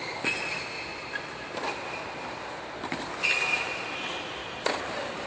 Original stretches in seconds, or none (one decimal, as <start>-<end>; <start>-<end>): 0.0-0.9; 2.3-4.4